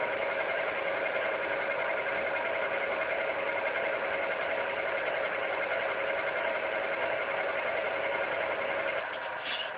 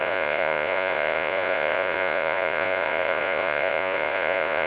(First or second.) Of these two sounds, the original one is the first